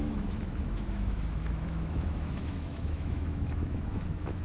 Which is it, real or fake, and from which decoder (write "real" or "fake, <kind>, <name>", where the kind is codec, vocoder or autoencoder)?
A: fake, autoencoder, DAC-VAE